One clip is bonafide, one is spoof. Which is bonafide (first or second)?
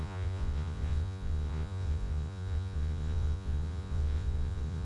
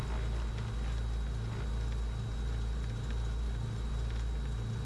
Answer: second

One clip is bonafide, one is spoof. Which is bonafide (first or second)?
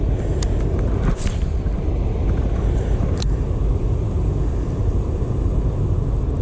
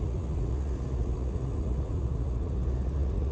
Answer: first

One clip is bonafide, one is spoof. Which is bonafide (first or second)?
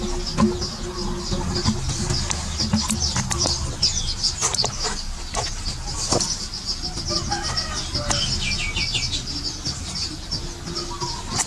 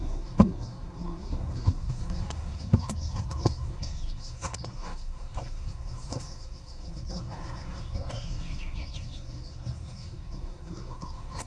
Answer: first